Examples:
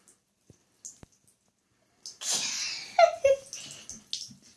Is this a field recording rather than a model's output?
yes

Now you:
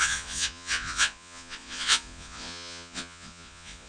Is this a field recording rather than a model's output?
no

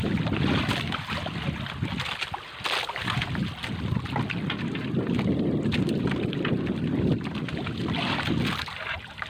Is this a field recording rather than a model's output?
yes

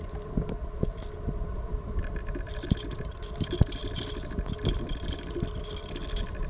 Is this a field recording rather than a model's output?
yes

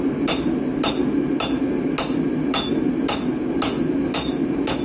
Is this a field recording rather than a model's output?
yes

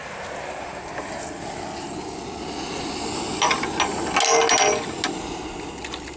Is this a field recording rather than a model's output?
yes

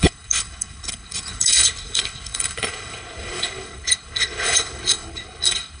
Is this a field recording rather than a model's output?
no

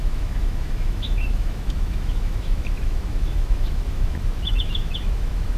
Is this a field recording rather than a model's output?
no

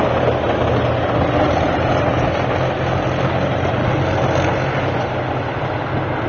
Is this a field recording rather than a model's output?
yes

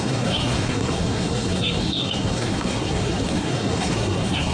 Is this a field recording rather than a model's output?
no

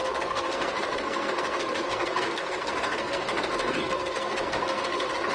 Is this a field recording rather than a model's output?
no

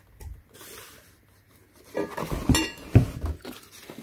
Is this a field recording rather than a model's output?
yes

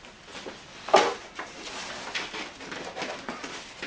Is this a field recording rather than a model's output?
yes